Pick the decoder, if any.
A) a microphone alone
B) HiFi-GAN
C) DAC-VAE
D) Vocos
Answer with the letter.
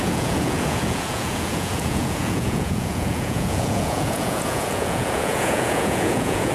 D